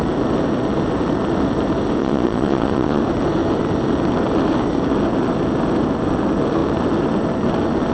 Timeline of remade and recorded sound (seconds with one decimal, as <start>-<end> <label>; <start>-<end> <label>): 0.0-2.0 recorded; 2.0-3.0 remade; 3.0-7.9 recorded